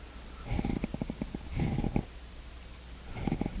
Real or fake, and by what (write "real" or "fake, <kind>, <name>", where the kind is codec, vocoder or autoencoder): real